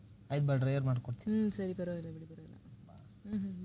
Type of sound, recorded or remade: recorded